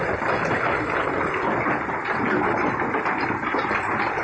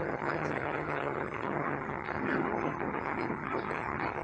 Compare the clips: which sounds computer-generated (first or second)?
second